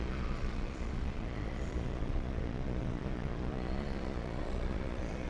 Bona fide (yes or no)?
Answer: no